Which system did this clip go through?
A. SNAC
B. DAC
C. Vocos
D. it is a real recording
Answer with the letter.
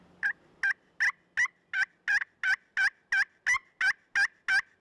D